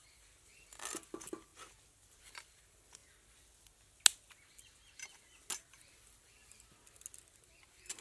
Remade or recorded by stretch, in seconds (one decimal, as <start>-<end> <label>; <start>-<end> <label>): 0.0-1.5 remade; 1.5-2.2 recorded; 2.2-3.0 remade; 3.0-5.9 recorded; 5.9-6.4 remade; 6.4-7.4 recorded; 7.4-8.0 remade